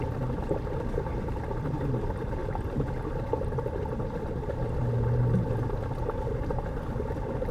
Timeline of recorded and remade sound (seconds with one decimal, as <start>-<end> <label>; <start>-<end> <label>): 0.0-7.5 recorded